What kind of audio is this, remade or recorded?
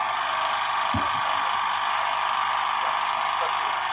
recorded